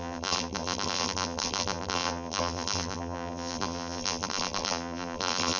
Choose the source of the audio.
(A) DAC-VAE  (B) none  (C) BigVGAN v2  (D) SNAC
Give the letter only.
C